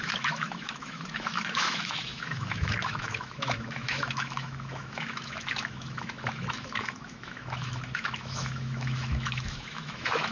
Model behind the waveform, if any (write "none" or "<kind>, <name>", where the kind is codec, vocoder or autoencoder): autoencoder, DAC-VAE